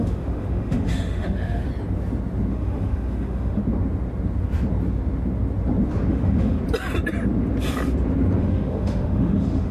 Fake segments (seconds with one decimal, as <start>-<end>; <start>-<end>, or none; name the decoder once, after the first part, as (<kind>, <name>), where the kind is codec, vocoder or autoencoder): 0.0-1.7 (autoencoder, DAC-VAE); 2.5-3.6; 6.1-6.6; 8.4-9.7